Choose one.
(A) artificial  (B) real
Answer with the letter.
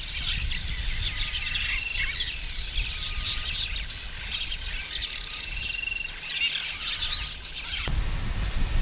B